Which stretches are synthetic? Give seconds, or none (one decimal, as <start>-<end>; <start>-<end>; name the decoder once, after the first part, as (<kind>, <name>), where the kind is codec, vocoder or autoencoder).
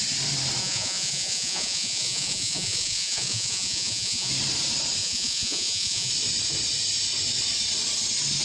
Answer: 0.6-4.3 (vocoder, Vocos); 5.0-6.1